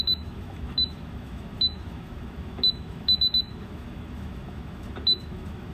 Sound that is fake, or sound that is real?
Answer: fake